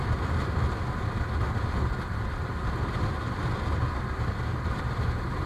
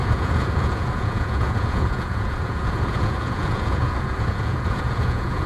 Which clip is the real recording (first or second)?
first